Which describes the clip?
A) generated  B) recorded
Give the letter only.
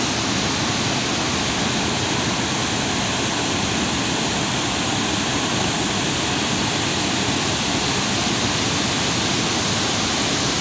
B